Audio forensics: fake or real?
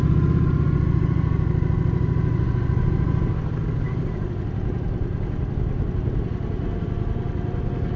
real